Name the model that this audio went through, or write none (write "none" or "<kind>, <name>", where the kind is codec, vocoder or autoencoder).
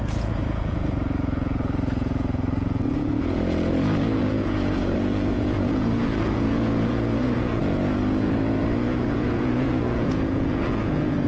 vocoder, Vocos